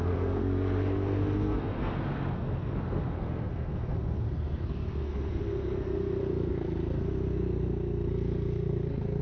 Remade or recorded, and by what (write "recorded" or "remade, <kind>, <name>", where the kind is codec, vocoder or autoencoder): remade, codec, SNAC